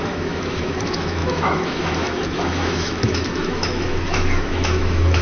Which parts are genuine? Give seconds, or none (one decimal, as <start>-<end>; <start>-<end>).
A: none